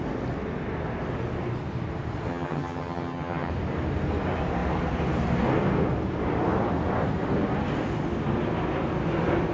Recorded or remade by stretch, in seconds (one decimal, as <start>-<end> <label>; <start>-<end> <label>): 0.0-2.3 recorded; 2.3-3.5 remade; 3.5-9.5 recorded